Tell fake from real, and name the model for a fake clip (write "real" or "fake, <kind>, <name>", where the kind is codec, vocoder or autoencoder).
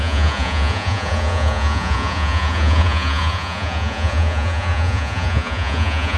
fake, vocoder, Vocos